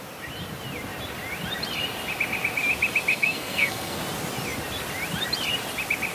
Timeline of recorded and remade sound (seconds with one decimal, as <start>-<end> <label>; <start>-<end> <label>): 0.0-3.1 recorded; 3.1-4.0 remade; 4.0-6.1 recorded